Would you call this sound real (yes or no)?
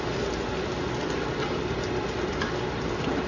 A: no